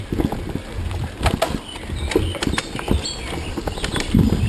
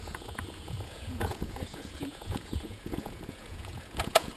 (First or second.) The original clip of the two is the first